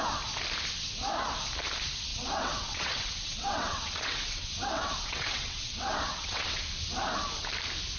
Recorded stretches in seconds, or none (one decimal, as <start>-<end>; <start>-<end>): 0.0-2.1; 6.6-8.0